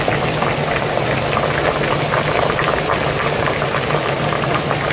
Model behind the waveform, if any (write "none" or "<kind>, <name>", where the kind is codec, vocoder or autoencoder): none